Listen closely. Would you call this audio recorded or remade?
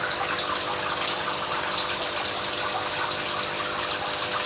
recorded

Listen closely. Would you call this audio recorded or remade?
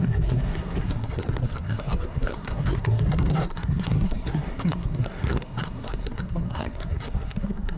remade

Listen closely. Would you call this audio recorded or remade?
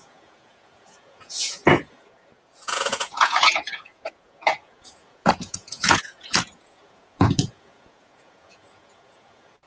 remade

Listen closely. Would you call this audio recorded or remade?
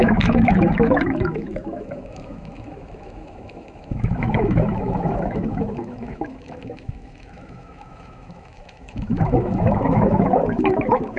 remade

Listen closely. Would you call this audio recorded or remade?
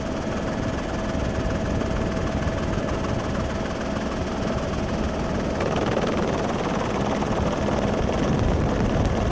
recorded